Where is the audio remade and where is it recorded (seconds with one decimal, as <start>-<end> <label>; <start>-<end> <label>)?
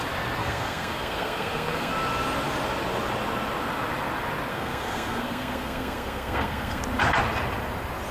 0.0-0.4 recorded; 0.4-1.9 remade; 1.9-4.5 recorded; 4.5-6.8 remade; 6.8-8.1 recorded